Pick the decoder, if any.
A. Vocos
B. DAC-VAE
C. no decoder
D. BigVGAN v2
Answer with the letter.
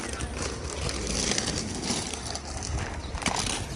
C